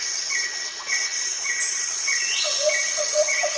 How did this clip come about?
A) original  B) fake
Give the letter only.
B